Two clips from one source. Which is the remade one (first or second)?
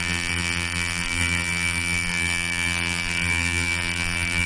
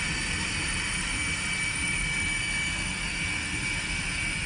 first